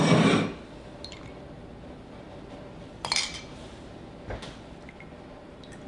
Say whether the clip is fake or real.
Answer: real